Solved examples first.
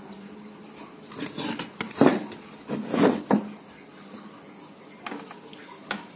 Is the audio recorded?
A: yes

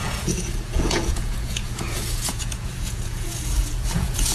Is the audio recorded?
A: no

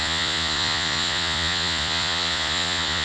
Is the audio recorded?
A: no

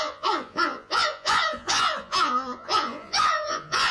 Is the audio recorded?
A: no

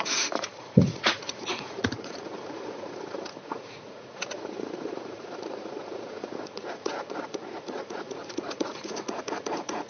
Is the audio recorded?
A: no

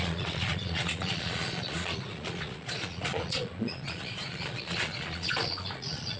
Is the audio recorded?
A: no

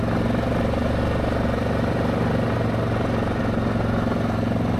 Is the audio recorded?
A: yes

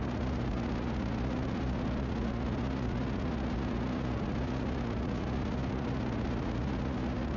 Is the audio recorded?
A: no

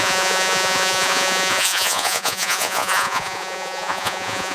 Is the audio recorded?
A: no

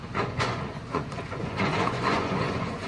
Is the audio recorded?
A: no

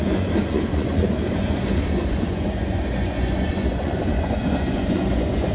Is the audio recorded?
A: no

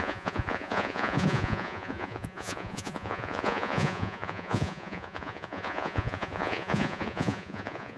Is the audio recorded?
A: no